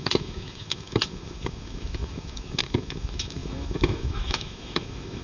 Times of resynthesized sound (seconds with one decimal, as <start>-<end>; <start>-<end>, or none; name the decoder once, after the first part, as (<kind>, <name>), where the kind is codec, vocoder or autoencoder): 0.0-5.2 (autoencoder, DAC-VAE)